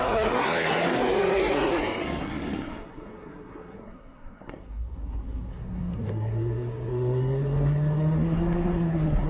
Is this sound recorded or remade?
remade